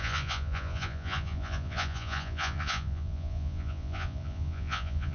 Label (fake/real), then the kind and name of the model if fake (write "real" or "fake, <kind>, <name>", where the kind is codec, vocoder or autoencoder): fake, vocoder, Vocos